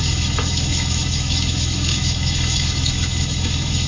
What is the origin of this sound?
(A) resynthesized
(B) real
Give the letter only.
A